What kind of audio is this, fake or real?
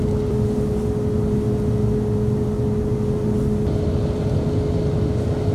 real